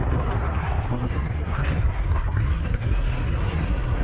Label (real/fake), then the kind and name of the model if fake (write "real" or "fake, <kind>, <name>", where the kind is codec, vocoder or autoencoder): fake, codec, SNAC